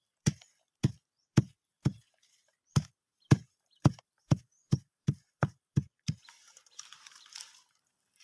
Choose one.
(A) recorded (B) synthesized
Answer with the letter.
B